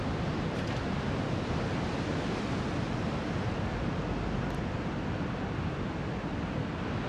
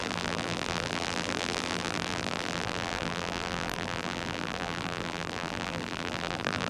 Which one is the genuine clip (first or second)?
first